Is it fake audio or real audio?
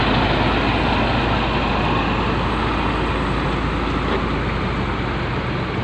real